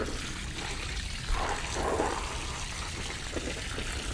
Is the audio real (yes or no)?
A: yes